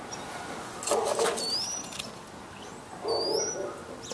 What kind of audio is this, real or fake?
real